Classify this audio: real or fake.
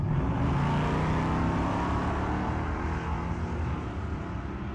real